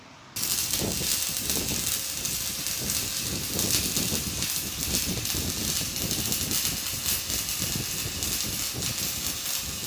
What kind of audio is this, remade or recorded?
recorded